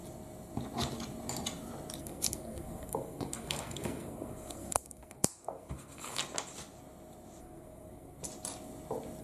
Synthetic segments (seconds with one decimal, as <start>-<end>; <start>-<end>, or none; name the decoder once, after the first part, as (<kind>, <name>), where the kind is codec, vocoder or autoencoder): 2.0-6.2 (codec, SNAC); 7.4-8.2